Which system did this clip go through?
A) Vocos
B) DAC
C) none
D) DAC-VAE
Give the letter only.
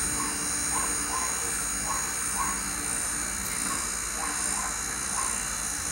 C